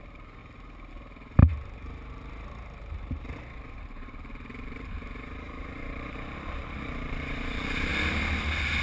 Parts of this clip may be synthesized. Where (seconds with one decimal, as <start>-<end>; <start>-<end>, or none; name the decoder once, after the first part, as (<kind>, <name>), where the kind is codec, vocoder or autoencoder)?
0.0-0.4 (vocoder, BigVGAN v2); 0.9-7.9